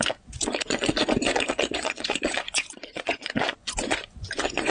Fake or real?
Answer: fake